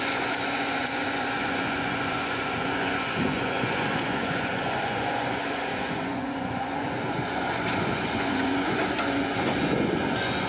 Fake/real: fake